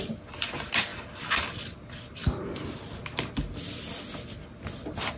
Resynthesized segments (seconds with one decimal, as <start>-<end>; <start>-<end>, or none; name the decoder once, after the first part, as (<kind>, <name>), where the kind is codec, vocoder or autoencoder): none